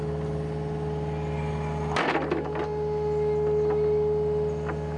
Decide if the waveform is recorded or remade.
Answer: recorded